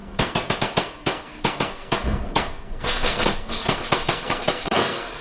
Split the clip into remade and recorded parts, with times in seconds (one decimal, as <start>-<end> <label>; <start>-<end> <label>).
0.0-5.2 remade